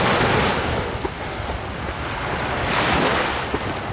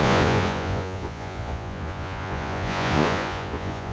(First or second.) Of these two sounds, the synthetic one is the second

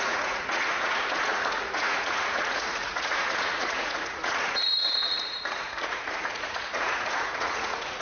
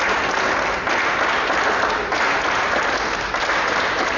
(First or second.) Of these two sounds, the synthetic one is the first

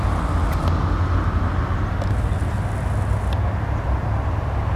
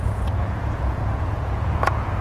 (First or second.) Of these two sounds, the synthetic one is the second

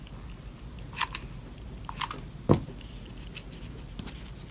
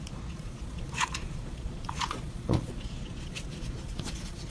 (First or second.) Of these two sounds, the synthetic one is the second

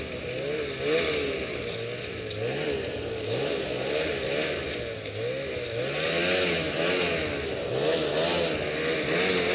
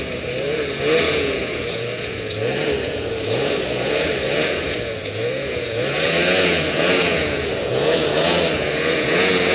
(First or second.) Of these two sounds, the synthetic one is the second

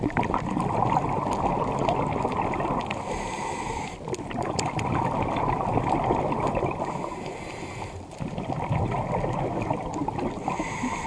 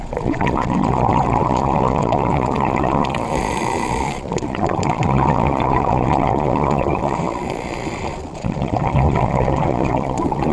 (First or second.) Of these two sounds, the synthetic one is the second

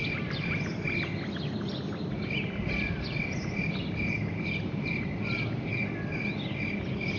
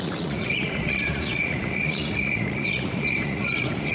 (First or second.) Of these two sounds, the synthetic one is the second